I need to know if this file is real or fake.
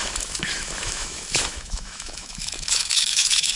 fake